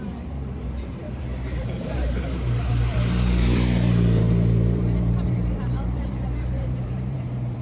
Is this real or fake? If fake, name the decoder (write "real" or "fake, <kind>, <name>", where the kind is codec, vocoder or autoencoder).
fake, vocoder, BigVGAN v2